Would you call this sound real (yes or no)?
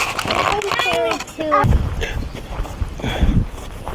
yes